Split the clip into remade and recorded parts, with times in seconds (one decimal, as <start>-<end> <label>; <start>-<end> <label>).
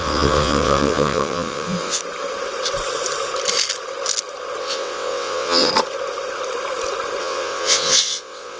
0.0-2.0 remade; 2.0-4.6 recorded; 4.6-5.7 remade; 5.7-7.2 recorded; 7.2-8.6 remade